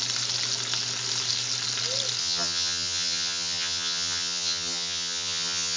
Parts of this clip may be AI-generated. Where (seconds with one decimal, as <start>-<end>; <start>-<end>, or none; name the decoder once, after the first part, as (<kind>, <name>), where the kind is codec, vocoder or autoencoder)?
2.2-5.8 (vocoder, HiFi-GAN)